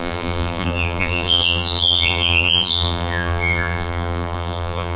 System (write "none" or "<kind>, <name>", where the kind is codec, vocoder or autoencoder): vocoder, BigVGAN v2